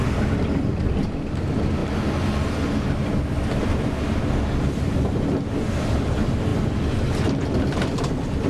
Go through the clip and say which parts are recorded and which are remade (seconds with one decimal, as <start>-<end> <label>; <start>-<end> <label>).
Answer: 0.0-8.5 recorded